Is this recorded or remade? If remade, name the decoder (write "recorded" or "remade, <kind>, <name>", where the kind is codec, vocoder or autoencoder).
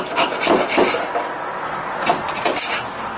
recorded